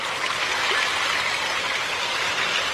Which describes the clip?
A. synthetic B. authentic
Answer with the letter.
A